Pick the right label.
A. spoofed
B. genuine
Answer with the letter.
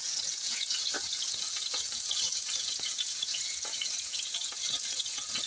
A